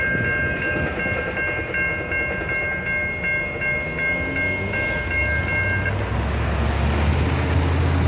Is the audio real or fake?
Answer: real